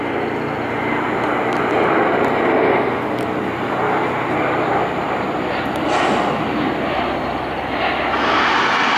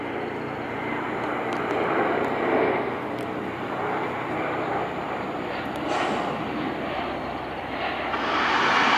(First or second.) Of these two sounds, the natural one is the first